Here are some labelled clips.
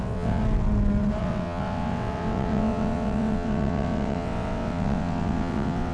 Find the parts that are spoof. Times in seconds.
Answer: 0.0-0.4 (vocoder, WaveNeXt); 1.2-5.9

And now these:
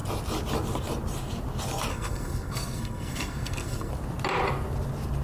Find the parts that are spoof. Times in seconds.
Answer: 1.9-3.9 (codec, SNAC)

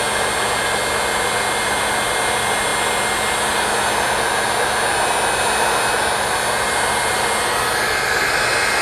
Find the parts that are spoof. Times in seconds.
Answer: none

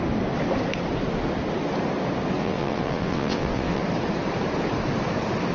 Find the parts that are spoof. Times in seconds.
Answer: 2.4-3.8 (vocoder, WaveNeXt)

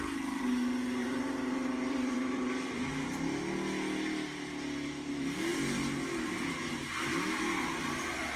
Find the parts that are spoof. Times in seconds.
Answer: 1.0-2.9 (vocoder, BigVGAN v2)

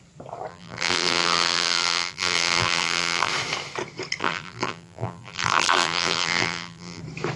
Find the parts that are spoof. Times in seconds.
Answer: 0.5-3.3 (vocoder, BigVGAN v2); 4.2-7.0

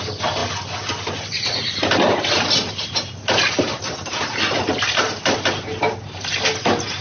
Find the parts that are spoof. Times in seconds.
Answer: none